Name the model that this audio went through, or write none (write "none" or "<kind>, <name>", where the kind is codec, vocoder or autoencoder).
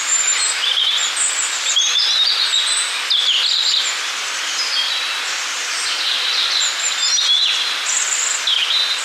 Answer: none